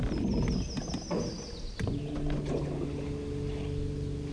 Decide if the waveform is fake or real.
real